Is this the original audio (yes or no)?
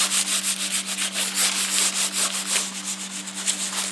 yes